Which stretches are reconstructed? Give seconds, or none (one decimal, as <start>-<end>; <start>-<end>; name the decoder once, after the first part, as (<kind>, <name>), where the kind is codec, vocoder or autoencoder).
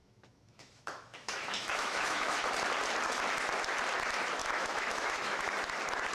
0.0-2.4 (autoencoder, DAC-VAE); 4.4-5.5